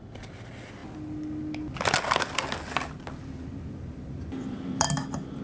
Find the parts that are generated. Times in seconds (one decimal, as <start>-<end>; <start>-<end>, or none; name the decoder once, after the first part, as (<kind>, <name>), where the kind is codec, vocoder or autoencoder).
0.0-0.8 (vocoder, BigVGAN v2); 3.7-5.4